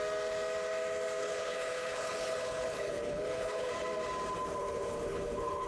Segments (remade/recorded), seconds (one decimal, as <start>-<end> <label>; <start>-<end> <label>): 0.0-1.2 recorded; 1.2-3.7 remade; 3.7-4.6 recorded; 4.6-5.7 remade